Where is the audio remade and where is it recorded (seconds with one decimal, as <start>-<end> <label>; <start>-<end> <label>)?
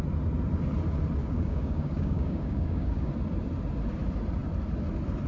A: 0.0-1.2 recorded; 1.2-3.1 remade; 3.1-5.3 recorded